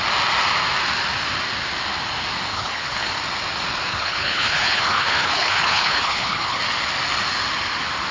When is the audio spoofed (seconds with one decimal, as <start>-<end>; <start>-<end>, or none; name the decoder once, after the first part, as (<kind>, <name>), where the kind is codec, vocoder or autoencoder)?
2.5-3.1 (codec, HILCodec); 3.9-6.6